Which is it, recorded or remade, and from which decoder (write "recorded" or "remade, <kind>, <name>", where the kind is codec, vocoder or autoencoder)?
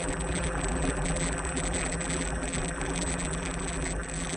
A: remade, vocoder, BigVGAN v2